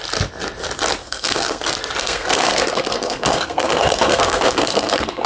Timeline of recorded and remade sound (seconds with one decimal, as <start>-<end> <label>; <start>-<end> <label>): 0.0-1.0 recorded; 1.0-1.6 remade; 1.6-2.0 recorded; 2.0-5.3 remade

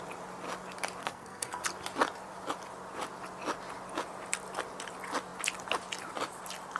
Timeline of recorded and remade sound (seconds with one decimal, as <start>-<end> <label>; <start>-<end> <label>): 0.0-1.0 recorded; 1.0-1.6 remade; 1.6-6.8 recorded